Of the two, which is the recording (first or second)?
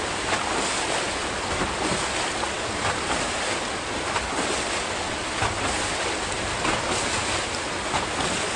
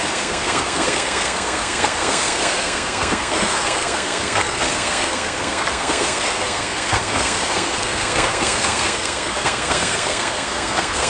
first